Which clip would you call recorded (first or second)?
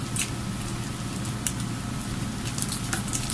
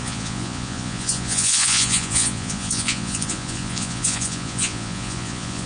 first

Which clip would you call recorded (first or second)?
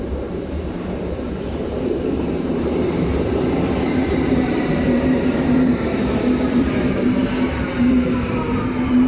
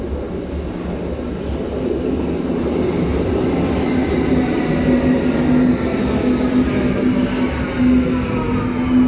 second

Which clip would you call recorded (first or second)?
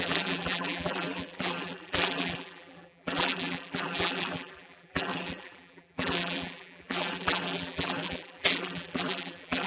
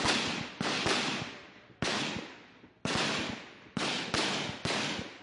second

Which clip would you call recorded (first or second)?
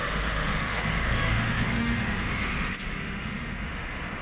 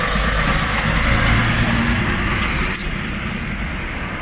second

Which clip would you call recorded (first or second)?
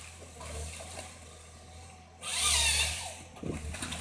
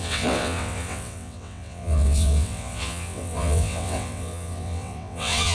first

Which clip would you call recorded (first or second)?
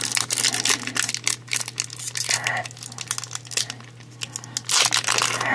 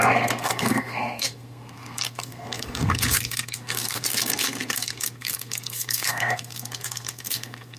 first